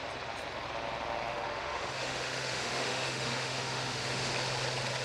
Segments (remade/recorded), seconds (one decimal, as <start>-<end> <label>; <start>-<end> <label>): 0.0-1.3 recorded; 1.3-4.3 remade; 4.3-5.0 recorded